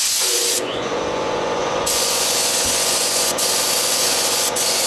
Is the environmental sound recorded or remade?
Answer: remade